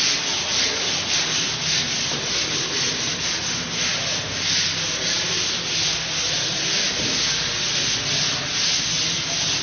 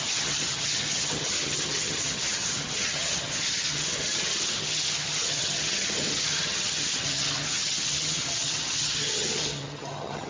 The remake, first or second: second